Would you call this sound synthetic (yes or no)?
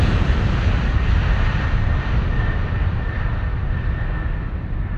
no